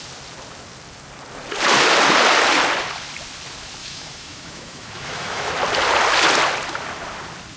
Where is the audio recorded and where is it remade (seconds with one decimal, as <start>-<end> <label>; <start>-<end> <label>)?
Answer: 0.0-3.8 recorded; 3.8-5.5 remade; 5.5-7.6 recorded